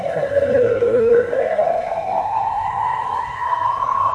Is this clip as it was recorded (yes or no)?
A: no